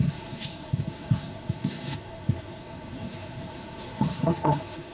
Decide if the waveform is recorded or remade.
remade